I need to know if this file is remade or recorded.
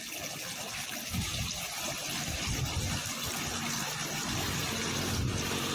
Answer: recorded